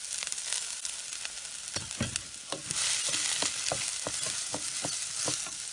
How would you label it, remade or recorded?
recorded